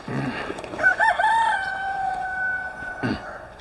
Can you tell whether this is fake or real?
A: fake